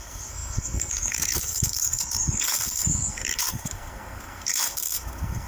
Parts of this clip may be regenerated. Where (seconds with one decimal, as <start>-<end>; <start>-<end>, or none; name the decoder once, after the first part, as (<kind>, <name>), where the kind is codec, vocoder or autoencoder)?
0.0-5.5 (codec, SNAC)